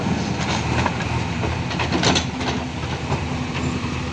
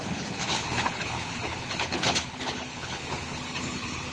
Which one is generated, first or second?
second